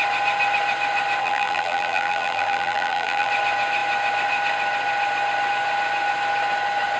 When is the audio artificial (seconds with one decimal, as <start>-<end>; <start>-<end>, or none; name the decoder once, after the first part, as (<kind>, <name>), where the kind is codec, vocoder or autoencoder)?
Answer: 1.2-3.3 (vocoder, BigVGAN v2)